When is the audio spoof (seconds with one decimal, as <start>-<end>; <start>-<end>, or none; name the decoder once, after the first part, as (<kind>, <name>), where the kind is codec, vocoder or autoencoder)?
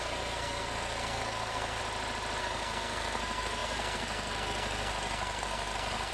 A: 0.0-1.8 (codec, SNAC); 2.4-6.1